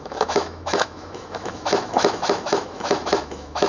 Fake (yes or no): yes